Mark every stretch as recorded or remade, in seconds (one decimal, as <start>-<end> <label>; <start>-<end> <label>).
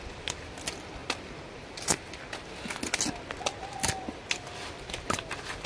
0.0-5.7 recorded